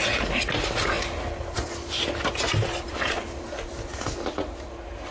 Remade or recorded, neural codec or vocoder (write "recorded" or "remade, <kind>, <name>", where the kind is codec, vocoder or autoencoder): recorded